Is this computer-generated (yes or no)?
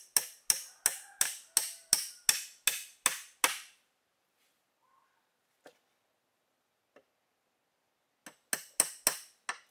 no